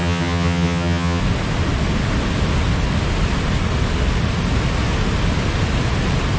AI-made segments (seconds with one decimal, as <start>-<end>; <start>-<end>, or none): 0.0-1.2